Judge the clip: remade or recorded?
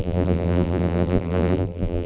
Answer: remade